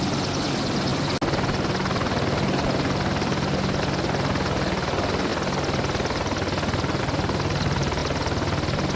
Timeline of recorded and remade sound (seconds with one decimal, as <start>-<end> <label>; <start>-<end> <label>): 0.0-9.0 recorded